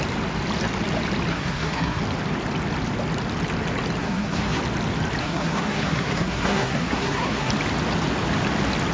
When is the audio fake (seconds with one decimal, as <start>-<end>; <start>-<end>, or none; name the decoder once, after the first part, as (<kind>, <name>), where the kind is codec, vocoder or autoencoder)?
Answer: 1.3-2.0 (codec, SNAC); 4.0-4.6; 5.2-7.5